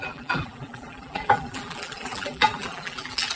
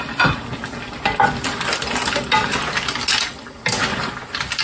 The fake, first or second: first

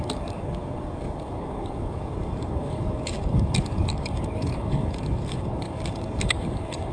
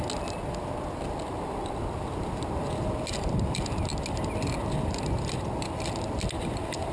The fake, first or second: first